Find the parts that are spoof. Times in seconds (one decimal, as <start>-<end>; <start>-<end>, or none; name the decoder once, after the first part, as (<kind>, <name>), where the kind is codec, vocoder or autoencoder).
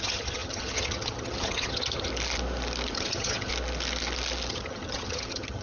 0.0-2.1 (vocoder, HiFi-GAN); 2.9-3.5; 4.5-5.6